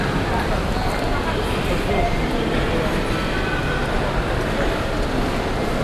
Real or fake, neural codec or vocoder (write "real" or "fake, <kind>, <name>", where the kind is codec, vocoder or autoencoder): real